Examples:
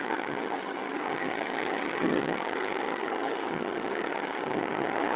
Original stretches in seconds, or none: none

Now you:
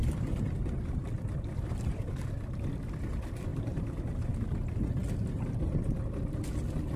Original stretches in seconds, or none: 0.0-3.5; 4.1-7.0